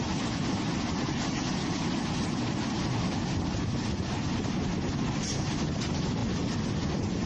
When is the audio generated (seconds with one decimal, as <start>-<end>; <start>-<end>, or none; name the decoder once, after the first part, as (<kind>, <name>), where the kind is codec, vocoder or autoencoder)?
none